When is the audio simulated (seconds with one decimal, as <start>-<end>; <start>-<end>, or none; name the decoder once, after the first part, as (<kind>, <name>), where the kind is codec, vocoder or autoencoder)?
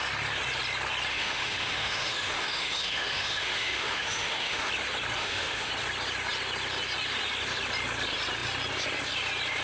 1.1-4.7 (autoencoder, DAC-VAE); 5.2-5.7